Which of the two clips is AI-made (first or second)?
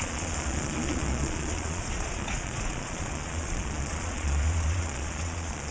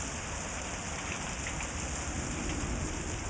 first